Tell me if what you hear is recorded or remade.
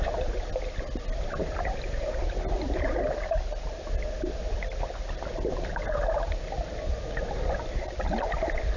recorded